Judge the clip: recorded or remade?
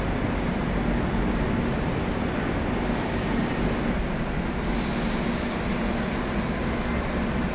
recorded